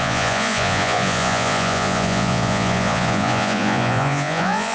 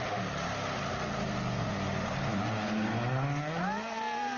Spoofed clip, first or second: first